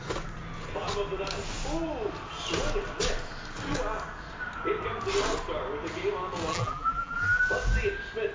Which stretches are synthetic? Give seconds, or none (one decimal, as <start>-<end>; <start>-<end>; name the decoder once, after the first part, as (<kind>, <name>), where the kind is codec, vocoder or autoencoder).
6.5-7.4 (vocoder, BigVGAN v2)